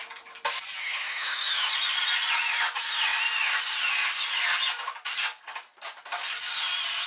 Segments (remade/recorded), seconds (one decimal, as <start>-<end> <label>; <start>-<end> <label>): 0.0-0.8 recorded; 0.8-1.7 remade; 1.7-7.1 recorded